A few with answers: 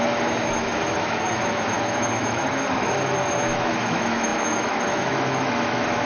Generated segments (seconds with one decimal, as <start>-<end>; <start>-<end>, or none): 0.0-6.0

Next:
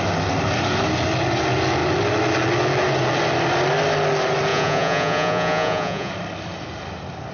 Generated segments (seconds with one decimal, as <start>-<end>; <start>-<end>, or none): 4.5-6.1

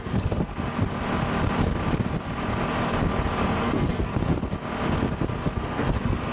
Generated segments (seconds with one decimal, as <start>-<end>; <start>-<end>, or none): 0.0-0.5; 3.6-4.1; 5.6-6.3